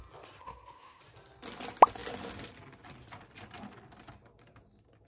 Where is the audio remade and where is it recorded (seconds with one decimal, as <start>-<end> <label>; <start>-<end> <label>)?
0.0-0.4 recorded; 0.4-1.0 remade; 1.0-5.1 recorded